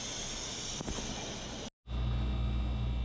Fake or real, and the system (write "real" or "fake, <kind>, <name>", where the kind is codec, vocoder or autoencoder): real